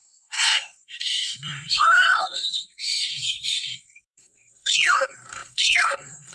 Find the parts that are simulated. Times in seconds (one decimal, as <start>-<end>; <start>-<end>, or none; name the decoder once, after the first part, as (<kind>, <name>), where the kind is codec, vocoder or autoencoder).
0.0-6.3 (codec, SNAC)